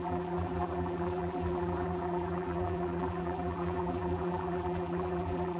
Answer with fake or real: fake